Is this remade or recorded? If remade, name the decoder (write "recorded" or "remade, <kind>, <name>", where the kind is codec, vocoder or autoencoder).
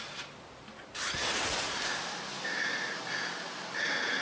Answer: recorded